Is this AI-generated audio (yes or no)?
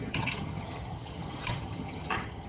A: yes